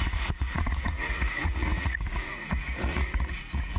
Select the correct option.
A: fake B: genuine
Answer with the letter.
A